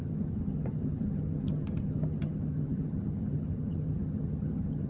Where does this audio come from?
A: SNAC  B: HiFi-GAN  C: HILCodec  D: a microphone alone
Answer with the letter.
B